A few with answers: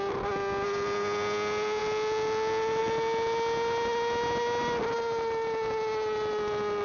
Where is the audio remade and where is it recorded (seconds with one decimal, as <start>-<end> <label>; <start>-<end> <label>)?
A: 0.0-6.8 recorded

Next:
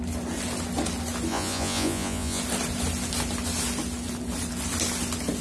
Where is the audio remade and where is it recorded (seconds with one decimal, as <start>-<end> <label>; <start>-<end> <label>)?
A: 0.0-1.3 recorded; 1.3-2.4 remade; 2.4-5.4 recorded

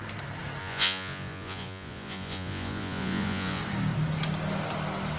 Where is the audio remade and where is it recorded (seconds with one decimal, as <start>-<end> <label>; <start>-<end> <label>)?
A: 0.0-0.6 recorded; 0.6-3.6 remade; 3.6-5.2 recorded

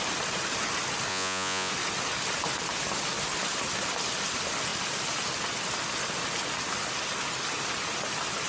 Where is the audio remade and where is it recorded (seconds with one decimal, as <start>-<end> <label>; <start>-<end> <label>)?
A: 0.0-1.1 recorded; 1.1-1.7 remade; 1.7-8.5 recorded